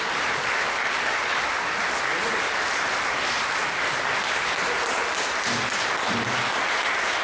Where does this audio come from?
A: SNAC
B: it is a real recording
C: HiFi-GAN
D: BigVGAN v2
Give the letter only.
B